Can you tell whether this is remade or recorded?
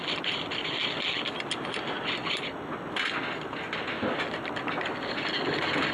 recorded